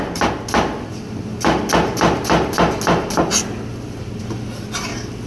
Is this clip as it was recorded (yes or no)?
yes